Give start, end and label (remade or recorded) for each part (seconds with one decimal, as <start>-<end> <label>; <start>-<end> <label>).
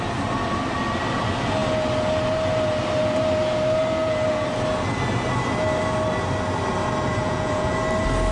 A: 0.0-7.2 recorded; 7.2-7.7 remade; 7.7-8.3 recorded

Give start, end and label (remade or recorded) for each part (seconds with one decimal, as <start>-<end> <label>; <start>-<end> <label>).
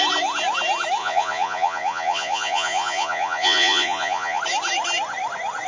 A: 0.0-1.0 recorded; 1.0-4.4 remade; 4.4-5.7 recorded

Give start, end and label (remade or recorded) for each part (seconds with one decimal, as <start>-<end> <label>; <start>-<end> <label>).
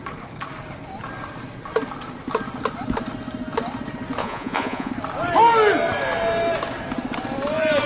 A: 0.0-4.2 recorded; 4.2-4.9 remade; 4.9-7.9 recorded